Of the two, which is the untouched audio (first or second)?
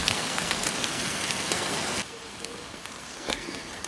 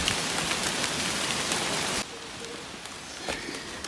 second